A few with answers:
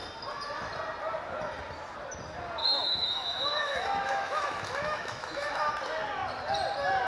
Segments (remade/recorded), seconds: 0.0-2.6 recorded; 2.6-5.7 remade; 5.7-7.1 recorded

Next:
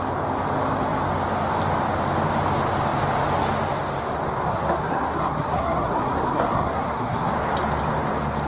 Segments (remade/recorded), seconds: 0.0-4.5 recorded; 4.5-7.3 remade; 7.3-8.5 recorded

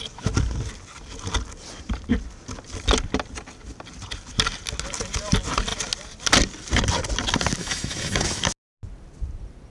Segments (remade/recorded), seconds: 0.0-7.6 recorded; 7.6-8.4 remade; 8.4-9.7 recorded

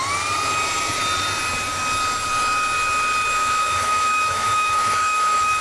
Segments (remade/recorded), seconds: 0.0-3.4 recorded; 3.4-5.6 remade

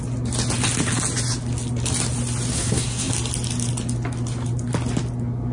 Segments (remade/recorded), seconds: 0.0-2.5 recorded; 2.5-3.1 remade; 3.1-5.5 recorded

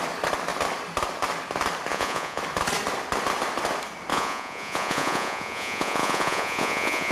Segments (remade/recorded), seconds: 0.0-1.9 recorded; 1.9-2.4 remade; 2.4-4.1 recorded; 4.1-7.1 remade

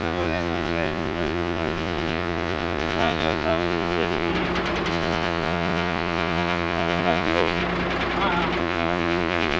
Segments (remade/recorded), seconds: 0.0-4.3 remade; 4.3-4.9 recorded; 4.9-7.6 remade; 7.6-8.6 recorded; 8.6-9.6 remade